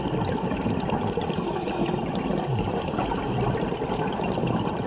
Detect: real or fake real